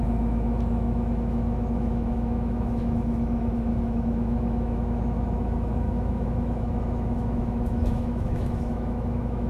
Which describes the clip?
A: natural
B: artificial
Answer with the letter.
B